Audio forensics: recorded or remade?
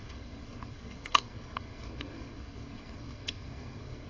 remade